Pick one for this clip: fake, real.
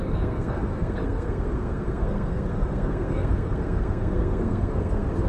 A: fake